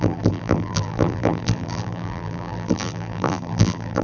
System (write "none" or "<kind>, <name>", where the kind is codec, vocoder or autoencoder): vocoder, BigVGAN v2